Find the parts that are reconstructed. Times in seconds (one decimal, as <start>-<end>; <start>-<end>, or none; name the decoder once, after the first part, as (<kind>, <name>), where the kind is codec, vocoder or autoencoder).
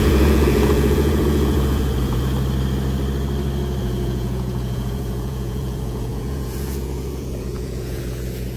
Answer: 0.0-2.2 (vocoder, Vocos); 3.8-8.6